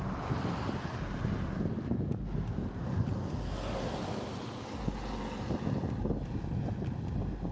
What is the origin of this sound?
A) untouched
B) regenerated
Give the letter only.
A